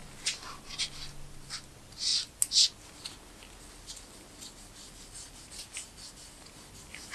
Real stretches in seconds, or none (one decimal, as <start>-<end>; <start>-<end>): 0.0-7.1